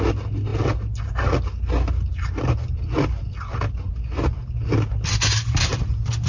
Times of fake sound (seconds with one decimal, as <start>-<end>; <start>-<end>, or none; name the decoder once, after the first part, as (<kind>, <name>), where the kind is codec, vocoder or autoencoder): none

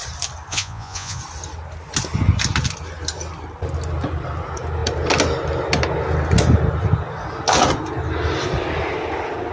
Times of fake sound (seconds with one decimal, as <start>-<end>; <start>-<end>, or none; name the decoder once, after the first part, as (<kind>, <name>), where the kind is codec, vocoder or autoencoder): 0.5-1.2 (vocoder, Vocos)